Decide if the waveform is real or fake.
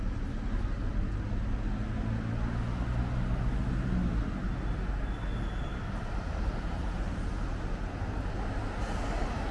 real